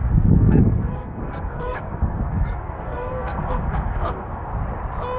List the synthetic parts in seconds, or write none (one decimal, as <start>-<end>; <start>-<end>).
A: 0.0-4.5